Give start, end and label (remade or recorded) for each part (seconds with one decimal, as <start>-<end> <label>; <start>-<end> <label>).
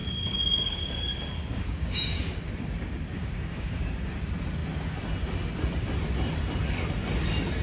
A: 0.0-4.1 remade; 4.1-7.6 recorded